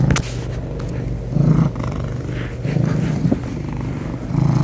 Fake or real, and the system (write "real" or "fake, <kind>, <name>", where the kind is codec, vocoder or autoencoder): real